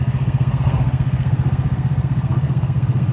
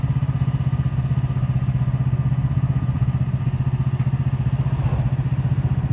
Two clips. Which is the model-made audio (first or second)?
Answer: first